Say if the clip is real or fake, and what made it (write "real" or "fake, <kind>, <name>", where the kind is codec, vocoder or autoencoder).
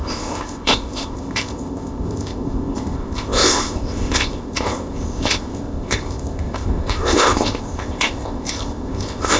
fake, codec, ZipCodec